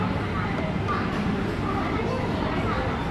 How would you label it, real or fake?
real